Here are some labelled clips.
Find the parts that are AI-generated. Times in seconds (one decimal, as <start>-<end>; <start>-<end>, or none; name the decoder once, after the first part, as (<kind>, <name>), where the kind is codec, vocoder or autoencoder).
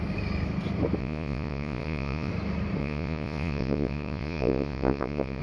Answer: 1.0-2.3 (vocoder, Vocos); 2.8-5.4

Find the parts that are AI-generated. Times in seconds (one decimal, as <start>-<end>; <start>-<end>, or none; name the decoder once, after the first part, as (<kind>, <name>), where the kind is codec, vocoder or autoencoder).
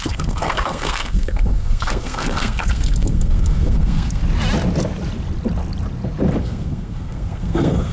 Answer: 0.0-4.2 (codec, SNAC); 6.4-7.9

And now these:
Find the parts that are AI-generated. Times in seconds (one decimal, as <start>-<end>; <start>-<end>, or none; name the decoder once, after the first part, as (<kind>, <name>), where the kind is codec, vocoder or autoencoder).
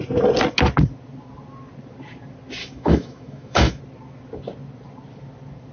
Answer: 2.6-3.8 (autoencoder, DAC-VAE)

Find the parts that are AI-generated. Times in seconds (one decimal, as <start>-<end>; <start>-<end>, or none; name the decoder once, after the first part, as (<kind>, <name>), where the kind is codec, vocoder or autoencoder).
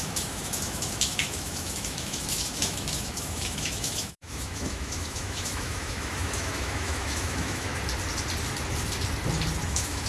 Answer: 0.0-7.7 (autoencoder, DAC-VAE); 9.6-10.1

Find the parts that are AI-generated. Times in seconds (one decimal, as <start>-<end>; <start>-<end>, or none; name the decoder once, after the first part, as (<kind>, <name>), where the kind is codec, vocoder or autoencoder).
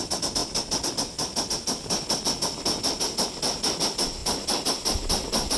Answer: none